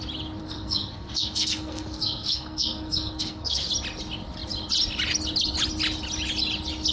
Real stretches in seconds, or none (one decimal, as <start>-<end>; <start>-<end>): 0.0-0.4; 3.7-6.9